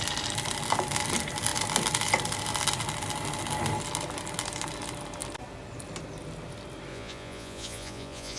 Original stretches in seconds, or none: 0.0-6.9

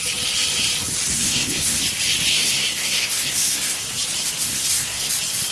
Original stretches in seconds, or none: 0.0-1.1; 1.8-2.3; 3.8-4.4; 5.1-5.5

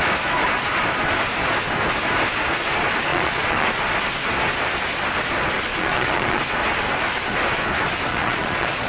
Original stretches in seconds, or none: 0.0-3.1; 3.7-5.7; 6.4-8.1